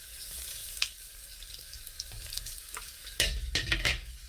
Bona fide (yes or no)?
no